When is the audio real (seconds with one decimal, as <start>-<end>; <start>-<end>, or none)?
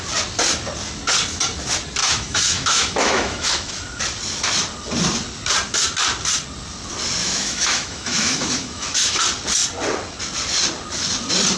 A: 0.0-2.0; 3.7-7.2; 9.2-11.6